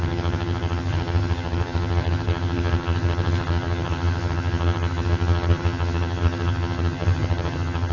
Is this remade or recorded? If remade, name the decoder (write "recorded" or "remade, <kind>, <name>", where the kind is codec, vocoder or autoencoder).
remade, vocoder, HiFi-GAN